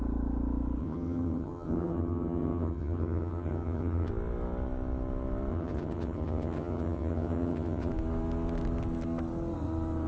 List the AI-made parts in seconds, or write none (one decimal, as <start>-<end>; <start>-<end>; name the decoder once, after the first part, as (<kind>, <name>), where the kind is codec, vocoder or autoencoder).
0.8-4.1 (vocoder, HiFi-GAN); 5.5-7.9